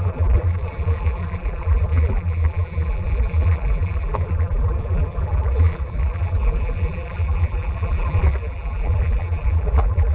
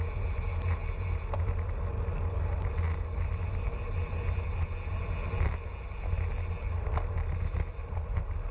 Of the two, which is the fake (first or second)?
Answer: first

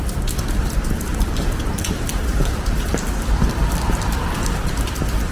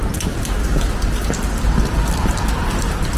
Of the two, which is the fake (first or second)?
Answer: first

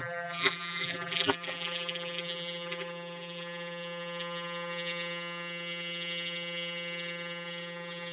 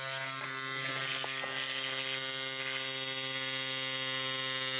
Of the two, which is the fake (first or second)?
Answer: first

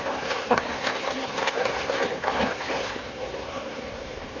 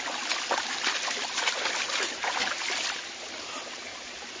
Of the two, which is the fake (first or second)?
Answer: first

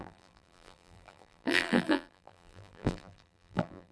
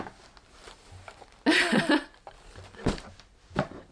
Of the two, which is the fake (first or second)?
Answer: first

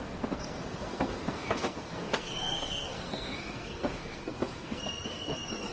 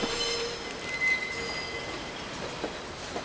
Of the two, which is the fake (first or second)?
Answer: first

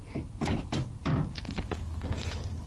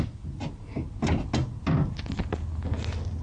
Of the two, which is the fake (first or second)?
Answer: first